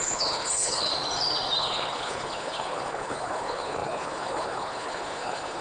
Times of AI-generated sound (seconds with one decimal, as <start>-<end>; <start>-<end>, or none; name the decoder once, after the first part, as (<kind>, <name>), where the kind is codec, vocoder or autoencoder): 0.0-0.9 (codec, HILCodec); 1.6-5.6